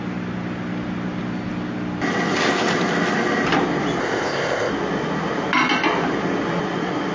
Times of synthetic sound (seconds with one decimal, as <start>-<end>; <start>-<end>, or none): 4.0-4.7